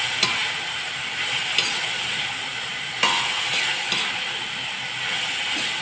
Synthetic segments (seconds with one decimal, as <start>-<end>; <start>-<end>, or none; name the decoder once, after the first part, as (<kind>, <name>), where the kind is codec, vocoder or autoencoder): none